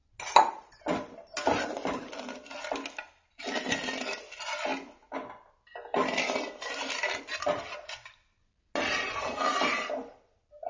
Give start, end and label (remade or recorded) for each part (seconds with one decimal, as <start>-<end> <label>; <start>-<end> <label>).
0.0-10.7 recorded